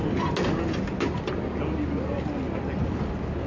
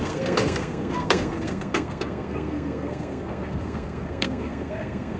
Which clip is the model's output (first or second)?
second